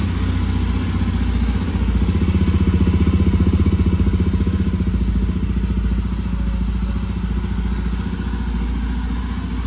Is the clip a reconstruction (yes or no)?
no